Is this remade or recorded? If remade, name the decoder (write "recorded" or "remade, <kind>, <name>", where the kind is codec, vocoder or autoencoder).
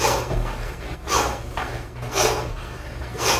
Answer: remade, codec, SNAC